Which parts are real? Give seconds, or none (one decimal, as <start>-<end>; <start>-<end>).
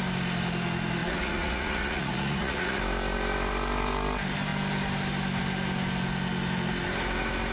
0.0-1.0; 2.8-7.5